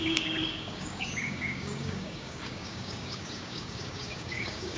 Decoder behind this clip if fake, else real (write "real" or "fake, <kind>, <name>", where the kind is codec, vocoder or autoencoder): fake, codec, DAC